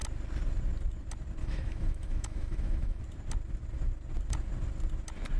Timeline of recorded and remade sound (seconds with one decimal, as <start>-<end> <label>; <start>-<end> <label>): 0.0-1.4 recorded; 1.4-3.0 remade; 3.0-5.4 recorded